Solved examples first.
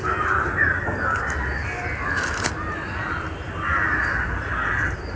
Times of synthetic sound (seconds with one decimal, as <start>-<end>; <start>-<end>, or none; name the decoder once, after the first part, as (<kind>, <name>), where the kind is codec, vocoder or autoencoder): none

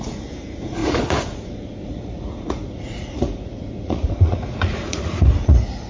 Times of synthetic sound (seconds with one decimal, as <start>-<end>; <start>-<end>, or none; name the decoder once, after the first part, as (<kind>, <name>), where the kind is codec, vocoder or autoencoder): 0.0-5.9 (vocoder, Vocos)

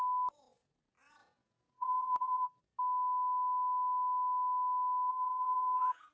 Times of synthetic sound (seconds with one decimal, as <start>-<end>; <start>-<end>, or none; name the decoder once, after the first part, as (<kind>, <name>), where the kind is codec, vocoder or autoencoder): 1.2-2.6 (vocoder, Vocos); 5.1-6.1

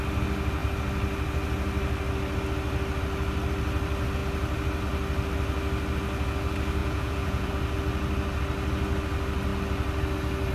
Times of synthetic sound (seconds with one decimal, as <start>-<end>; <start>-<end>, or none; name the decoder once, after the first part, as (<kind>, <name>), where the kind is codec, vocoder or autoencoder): 6.8-7.5 (vocoder, Vocos)

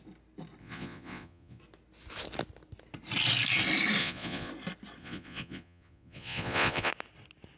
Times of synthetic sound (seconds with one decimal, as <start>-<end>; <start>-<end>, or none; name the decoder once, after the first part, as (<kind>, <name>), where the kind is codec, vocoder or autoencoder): 0.6-1.6 (vocoder, Vocos); 4.0-4.5; 5.0-6.9

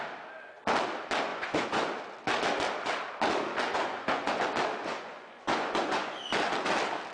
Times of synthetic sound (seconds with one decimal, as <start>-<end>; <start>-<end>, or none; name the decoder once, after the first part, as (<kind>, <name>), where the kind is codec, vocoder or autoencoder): 1.3-1.9 (vocoder, Vocos); 3.7-4.3; 4.8-6.2